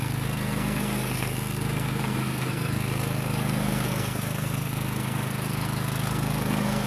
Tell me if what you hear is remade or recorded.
remade